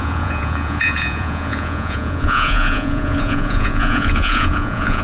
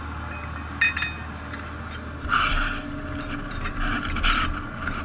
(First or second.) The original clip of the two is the second